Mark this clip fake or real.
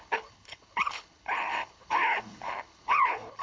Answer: fake